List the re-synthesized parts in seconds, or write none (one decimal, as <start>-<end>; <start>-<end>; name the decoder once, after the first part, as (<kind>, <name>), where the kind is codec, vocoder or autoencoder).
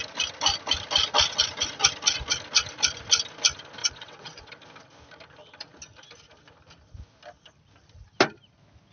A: 3.8-4.5 (vocoder, WaveNeXt)